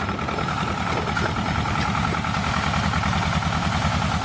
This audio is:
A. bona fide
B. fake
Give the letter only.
A